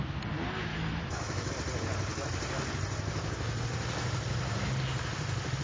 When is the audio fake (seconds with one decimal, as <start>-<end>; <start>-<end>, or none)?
0.7-1.5